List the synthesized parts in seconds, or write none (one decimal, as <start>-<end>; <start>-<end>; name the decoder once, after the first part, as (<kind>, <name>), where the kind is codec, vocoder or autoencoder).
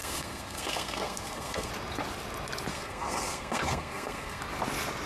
0.0-1.7 (codec, SNAC); 2.7-4.4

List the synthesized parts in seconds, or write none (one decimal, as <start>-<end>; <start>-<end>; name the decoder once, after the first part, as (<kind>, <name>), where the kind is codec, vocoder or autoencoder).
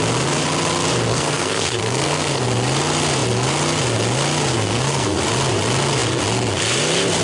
1.1-2.4 (codec, SNAC); 4.5-5.2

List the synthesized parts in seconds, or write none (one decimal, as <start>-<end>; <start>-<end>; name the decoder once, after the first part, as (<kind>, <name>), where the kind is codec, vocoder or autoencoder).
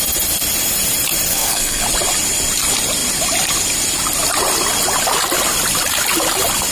1.3-1.8 (codec, SNAC)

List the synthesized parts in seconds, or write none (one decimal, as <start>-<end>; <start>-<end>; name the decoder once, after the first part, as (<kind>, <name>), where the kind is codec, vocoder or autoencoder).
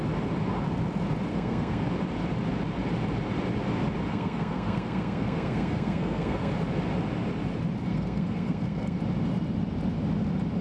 1.3-1.9 (codec, SNAC); 4.1-6.5; 7.9-9.0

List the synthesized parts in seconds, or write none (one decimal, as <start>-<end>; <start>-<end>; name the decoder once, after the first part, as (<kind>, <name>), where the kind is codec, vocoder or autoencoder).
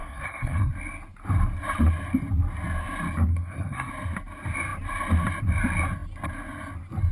0.0-0.7 (codec, SNAC); 3.3-3.9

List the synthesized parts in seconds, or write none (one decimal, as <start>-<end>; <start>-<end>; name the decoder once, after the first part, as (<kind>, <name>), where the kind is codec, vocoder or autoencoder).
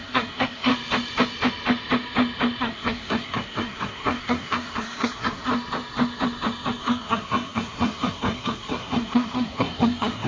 0.0-0.7 (codec, SNAC); 2.6-5.5; 6.8-10.3